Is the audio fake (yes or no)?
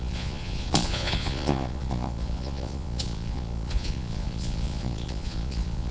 yes